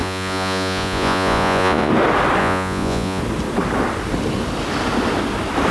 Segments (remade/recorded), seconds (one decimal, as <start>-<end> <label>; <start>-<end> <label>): 0.0-1.9 remade; 1.9-2.4 recorded; 2.4-3.2 remade; 3.2-5.7 recorded